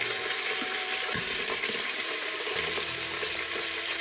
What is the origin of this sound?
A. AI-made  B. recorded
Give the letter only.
A